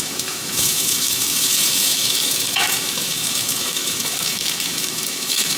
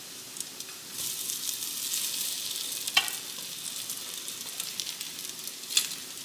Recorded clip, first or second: second